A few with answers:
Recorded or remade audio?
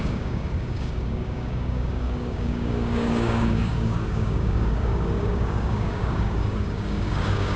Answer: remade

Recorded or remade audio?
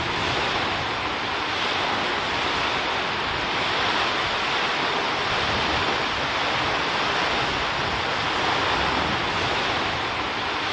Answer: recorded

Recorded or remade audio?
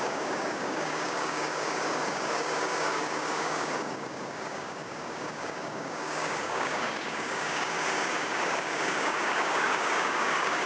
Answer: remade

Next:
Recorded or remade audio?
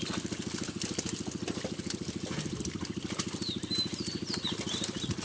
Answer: recorded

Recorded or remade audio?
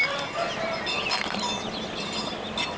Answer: recorded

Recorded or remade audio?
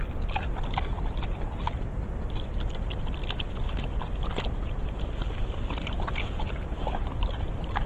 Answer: recorded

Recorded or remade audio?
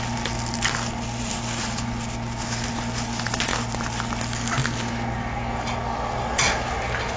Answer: recorded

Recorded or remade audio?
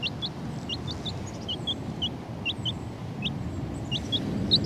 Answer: recorded